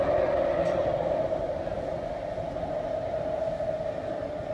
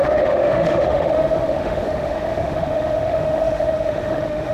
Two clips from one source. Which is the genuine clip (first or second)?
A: first